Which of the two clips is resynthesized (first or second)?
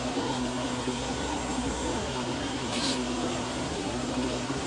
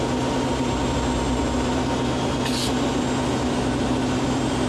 first